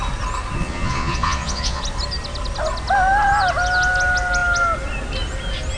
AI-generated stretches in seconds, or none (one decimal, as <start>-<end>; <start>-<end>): 0.6-1.8